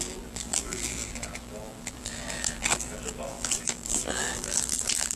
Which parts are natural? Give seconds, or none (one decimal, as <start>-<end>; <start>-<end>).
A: none